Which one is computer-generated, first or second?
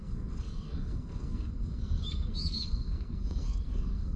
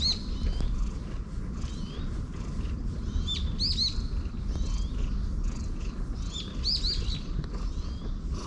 first